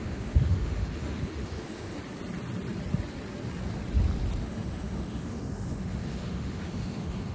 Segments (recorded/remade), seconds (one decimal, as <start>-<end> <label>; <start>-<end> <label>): 0.0-2.0 remade; 2.0-4.4 recorded; 4.4-7.3 remade